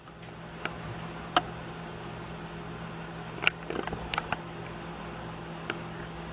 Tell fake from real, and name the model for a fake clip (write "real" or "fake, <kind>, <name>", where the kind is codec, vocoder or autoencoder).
real